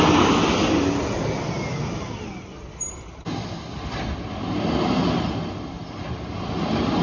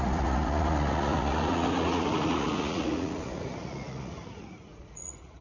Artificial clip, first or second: second